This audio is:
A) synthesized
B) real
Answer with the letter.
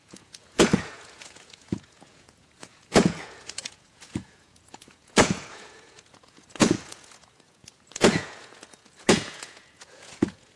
A